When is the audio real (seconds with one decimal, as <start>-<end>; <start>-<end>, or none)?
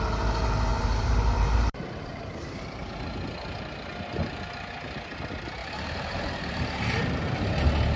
0.0-0.7; 2.6-5.6; 7.2-8.0